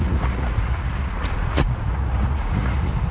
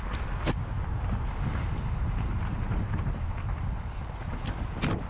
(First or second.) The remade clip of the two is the first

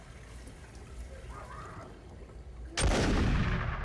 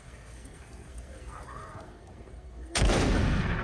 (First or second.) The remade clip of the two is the second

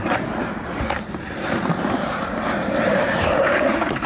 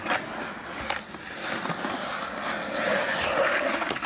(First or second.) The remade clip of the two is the first